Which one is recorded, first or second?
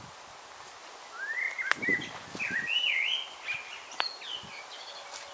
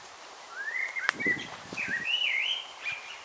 first